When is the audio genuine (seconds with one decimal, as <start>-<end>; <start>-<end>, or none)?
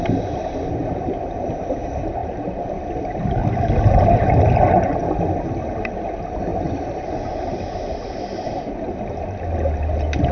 0.0-10.3